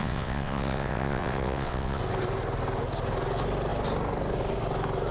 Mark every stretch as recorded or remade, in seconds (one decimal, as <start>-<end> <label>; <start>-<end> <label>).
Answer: 0.0-2.0 remade; 2.0-5.1 recorded